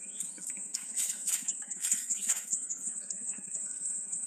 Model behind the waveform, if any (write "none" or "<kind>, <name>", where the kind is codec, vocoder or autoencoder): codec, SNAC